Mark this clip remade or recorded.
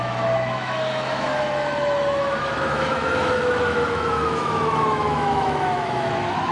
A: remade